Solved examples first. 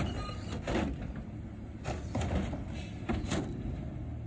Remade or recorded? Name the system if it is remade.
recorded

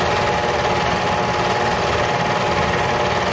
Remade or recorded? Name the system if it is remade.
recorded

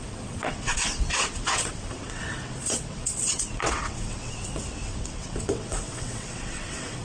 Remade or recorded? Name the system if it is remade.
remade, vocoder, WaveNeXt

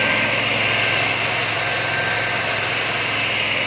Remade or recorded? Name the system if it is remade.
recorded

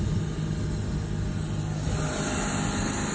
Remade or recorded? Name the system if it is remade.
recorded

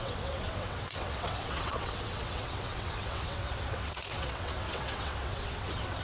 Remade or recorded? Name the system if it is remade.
remade, vocoder, WaveNeXt